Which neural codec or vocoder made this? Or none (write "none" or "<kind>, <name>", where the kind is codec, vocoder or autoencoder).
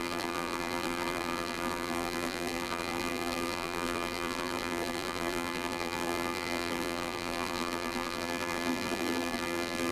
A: vocoder, BigVGAN v2